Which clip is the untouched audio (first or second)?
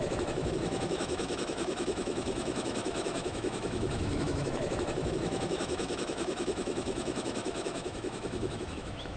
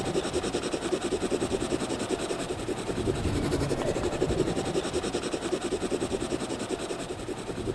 second